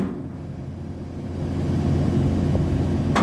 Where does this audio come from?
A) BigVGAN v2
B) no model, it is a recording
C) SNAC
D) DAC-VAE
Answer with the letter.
B